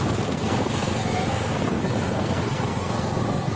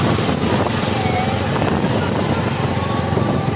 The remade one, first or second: first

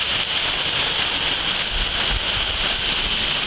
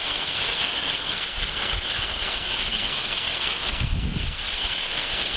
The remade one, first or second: second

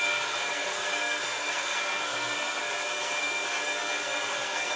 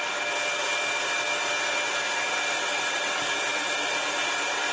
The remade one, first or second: first